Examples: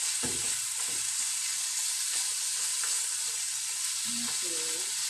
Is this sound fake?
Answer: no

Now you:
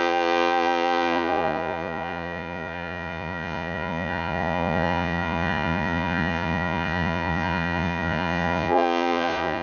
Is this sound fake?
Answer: yes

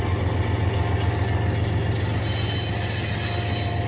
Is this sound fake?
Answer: no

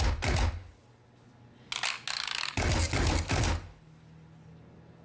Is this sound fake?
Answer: no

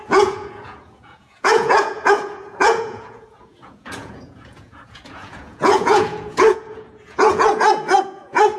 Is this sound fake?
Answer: yes